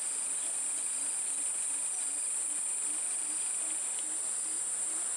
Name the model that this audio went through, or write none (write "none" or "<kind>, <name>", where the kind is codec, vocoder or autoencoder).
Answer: none